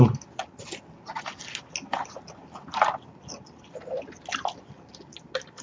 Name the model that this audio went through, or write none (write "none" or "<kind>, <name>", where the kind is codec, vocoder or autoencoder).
none